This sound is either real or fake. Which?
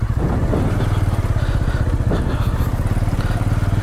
real